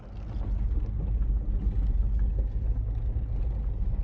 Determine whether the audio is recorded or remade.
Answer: recorded